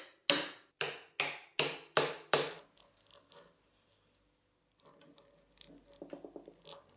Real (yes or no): yes